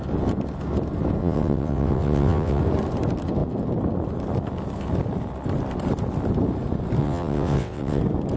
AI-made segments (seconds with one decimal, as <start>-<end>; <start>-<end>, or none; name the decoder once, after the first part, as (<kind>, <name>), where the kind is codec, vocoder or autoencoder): 1.2-2.6 (vocoder, WaveNeXt); 7.0-8.0